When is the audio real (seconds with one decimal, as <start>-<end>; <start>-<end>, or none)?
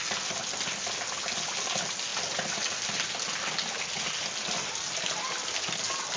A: 0.0-6.2